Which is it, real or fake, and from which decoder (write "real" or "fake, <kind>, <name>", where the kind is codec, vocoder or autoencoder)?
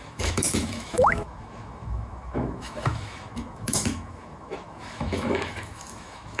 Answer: fake, autoencoder, DAC-VAE